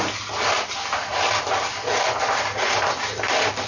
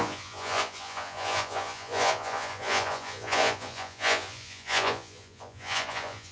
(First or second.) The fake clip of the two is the second